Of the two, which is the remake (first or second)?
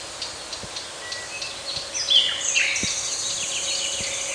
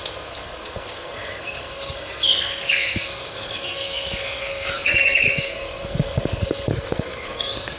second